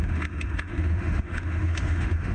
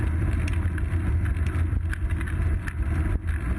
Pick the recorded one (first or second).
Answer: second